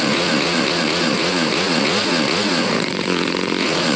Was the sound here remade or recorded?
remade